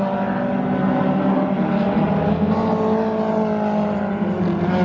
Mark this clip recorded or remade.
recorded